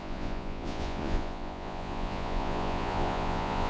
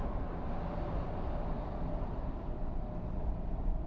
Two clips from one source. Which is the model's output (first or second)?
first